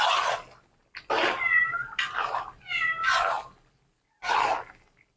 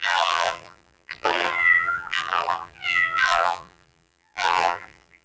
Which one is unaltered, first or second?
first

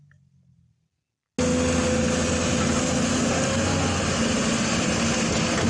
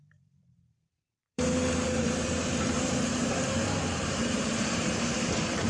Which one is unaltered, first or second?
first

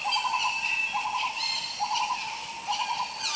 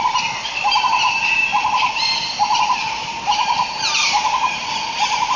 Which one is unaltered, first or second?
first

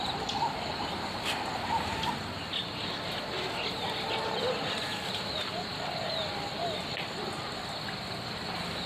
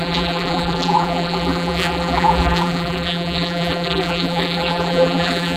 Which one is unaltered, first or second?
first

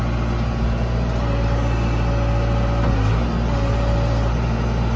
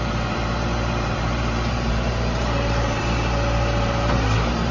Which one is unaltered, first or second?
first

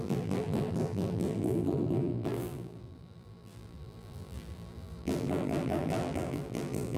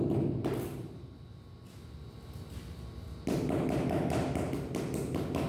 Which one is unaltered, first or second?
second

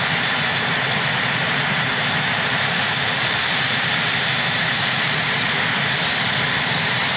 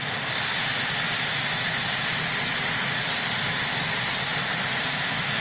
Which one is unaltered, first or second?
second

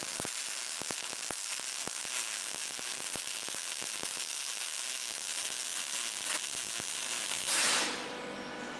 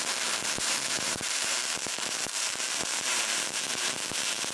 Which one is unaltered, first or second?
first